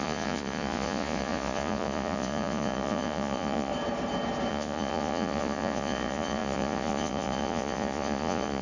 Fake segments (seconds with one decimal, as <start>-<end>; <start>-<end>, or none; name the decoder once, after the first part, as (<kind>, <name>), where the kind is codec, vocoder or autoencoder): 0.0-3.7 (vocoder, Vocos); 4.5-8.6

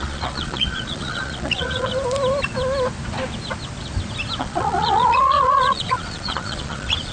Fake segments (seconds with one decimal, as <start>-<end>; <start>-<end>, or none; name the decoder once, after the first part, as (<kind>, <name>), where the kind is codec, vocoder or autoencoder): 0.0-1.9 (vocoder, Vocos); 4.4-7.1

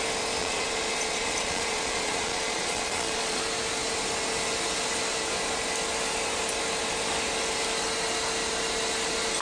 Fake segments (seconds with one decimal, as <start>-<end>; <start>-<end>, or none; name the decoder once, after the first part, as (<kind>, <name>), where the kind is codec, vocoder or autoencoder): 0.4-3.4 (vocoder, Vocos)

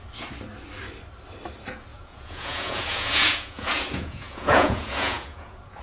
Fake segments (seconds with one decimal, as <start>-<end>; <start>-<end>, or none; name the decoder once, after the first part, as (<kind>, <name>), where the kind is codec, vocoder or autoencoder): 1.9-5.8 (vocoder, Vocos)

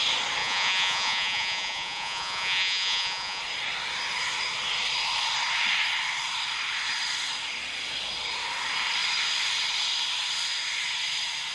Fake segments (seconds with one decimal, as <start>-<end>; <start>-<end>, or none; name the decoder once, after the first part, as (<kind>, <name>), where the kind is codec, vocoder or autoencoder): 0.4-3.4 (vocoder, Vocos)

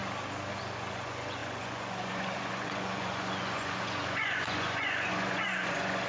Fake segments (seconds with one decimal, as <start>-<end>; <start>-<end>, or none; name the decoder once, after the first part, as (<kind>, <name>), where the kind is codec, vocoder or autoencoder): 0.6-6.1 (vocoder, Vocos)

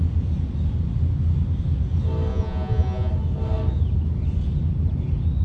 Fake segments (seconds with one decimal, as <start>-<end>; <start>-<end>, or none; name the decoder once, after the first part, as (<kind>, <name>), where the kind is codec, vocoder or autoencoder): 2.3-3.1 (vocoder, Vocos)

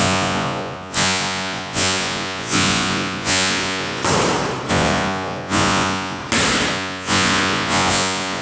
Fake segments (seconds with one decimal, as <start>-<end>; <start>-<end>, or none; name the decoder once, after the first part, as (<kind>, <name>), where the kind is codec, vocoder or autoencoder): 0.0-4.0 (vocoder, Vocos); 4.7-6.2; 6.7-8.4